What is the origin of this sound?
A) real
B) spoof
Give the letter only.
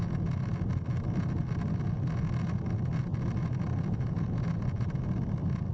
A